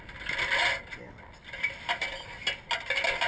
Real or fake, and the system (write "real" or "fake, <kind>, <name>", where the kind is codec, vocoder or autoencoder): real